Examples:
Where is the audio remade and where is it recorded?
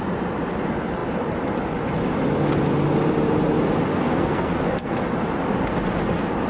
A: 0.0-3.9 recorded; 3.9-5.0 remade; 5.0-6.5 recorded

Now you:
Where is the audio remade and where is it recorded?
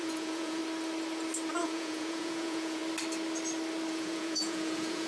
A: 0.0-0.6 remade; 0.6-1.6 recorded; 1.6-2.8 remade; 2.8-3.9 recorded; 3.9-5.1 remade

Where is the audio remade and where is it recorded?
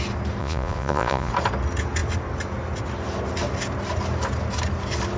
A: 0.0-0.4 recorded; 0.4-1.3 remade; 1.3-5.2 recorded